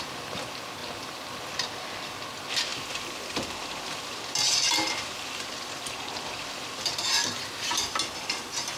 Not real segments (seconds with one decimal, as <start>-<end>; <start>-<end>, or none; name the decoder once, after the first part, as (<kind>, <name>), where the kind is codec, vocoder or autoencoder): 2.7-7.4 (vocoder, BigVGAN v2)